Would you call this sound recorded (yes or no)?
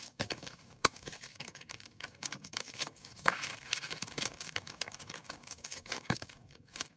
no